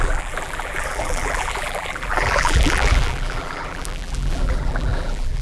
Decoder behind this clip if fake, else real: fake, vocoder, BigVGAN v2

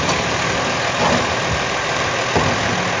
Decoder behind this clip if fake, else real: real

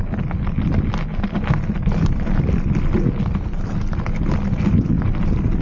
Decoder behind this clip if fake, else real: real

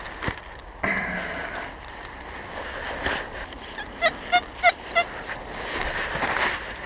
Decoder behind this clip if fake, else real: real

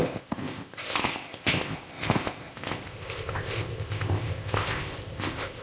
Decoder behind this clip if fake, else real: fake, codec, ZipCodec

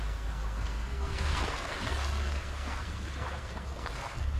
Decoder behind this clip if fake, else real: fake, codec, SNAC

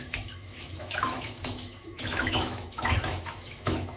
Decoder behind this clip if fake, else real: fake, autoencoder, DAC-VAE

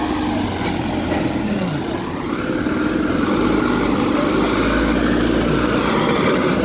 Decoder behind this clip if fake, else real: real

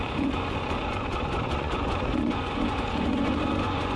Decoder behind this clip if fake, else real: fake, vocoder, Vocos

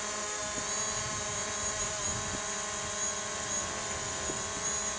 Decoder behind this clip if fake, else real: real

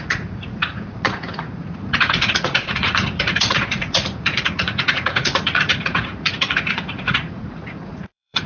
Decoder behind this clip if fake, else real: fake, vocoder, Vocos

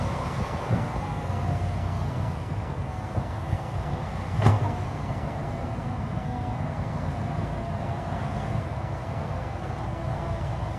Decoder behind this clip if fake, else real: fake, codec, SNAC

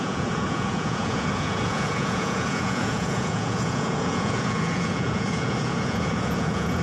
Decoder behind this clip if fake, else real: fake, vocoder, Vocos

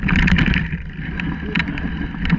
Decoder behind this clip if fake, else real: real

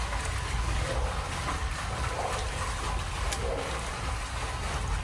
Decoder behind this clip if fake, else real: real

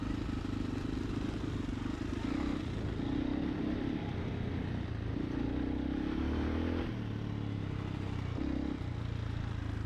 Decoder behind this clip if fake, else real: real